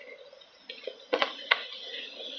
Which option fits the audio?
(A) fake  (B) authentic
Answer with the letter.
A